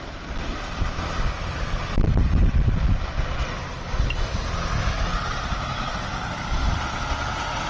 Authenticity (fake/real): real